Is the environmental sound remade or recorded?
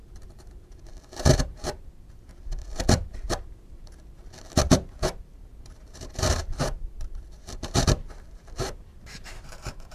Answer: remade